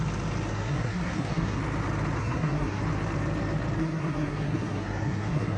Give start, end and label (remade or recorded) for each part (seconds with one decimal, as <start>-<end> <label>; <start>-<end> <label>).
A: 0.0-0.5 recorded; 0.5-1.6 remade; 1.6-2.2 recorded; 2.2-2.8 remade; 2.8-3.8 recorded; 3.8-5.6 remade